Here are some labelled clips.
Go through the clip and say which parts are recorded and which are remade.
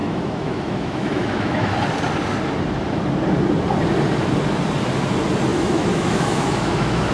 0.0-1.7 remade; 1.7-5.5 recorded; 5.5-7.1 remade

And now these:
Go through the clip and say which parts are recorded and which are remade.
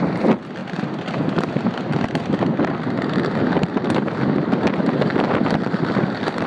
0.0-6.5 recorded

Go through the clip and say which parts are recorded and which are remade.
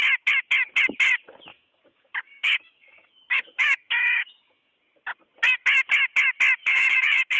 0.0-1.5 recorded; 1.5-4.7 remade; 4.7-6.6 recorded; 6.6-7.4 remade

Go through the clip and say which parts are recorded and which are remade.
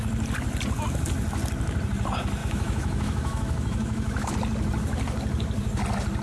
0.0-2.4 recorded; 2.4-4.3 remade; 4.3-6.2 recorded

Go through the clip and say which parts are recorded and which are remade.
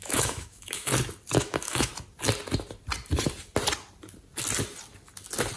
0.0-0.9 remade; 0.9-1.4 recorded; 1.4-1.9 remade; 1.9-5.6 recorded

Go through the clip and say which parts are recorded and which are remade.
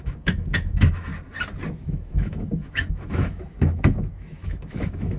0.0-1.1 remade; 1.1-1.8 recorded; 1.8-5.2 remade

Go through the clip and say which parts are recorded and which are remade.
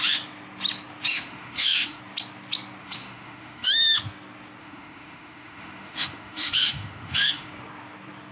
0.0-1.1 recorded; 1.1-2.0 remade; 2.0-2.8 recorded; 2.8-4.0 remade; 4.0-4.6 recorded; 4.6-7.5 remade; 7.5-8.3 recorded